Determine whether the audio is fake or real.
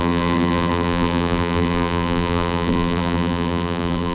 fake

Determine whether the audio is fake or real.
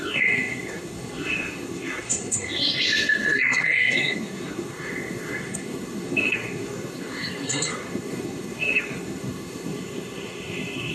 fake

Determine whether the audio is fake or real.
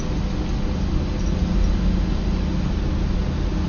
real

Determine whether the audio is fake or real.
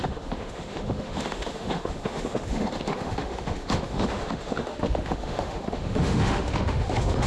fake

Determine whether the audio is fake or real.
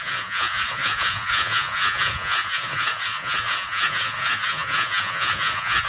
fake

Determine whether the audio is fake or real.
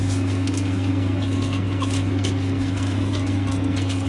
fake